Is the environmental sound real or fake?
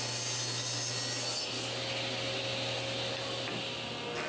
real